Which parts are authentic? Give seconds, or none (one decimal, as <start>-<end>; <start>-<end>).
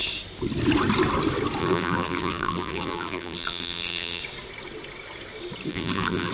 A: 0.0-1.6; 4.2-5.7